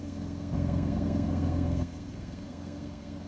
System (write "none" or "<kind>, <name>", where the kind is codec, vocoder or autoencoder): codec, SNAC